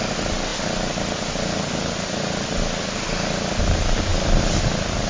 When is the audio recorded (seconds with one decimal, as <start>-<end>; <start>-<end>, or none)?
0.0-5.1